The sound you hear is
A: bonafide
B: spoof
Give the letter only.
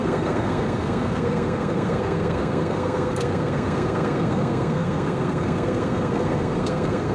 B